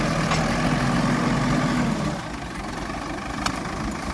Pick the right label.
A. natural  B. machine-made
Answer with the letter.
A